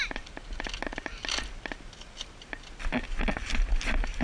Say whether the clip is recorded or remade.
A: recorded